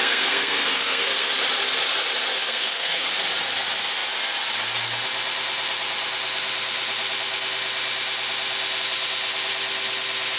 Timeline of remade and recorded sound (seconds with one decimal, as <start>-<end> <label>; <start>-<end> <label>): 0.0-1.3 remade; 1.3-2.3 recorded; 2.3-3.1 remade; 3.1-10.4 recorded